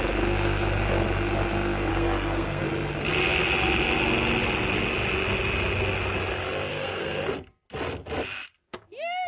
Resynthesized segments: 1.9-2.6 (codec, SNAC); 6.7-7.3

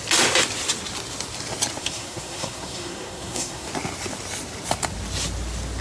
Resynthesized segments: 1.8-3.7 (codec, SNAC)

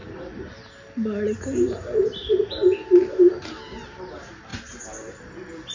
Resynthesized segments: none

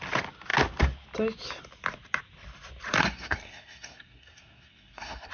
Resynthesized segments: 3.0-5.3 (codec, SNAC)

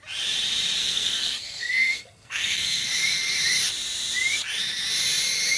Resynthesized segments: 0.8-2.9 (codec, SNAC)

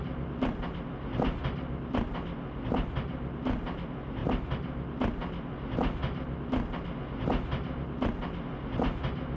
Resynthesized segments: none

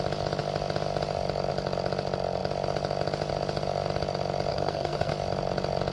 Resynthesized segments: 4.5-5.1 (codec, SNAC)